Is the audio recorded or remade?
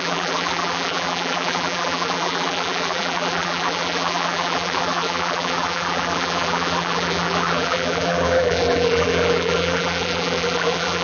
remade